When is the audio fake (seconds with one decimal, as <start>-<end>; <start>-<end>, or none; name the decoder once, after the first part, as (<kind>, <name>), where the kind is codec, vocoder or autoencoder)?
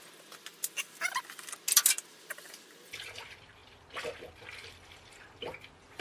none